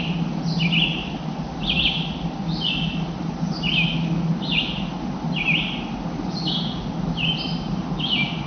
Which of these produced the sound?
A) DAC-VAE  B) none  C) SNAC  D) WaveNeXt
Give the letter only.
B